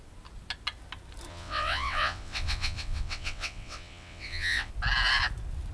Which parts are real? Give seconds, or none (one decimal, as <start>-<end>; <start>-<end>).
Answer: 0.0-1.3; 4.7-5.7